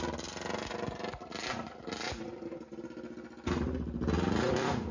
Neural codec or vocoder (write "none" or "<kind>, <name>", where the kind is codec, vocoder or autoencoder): none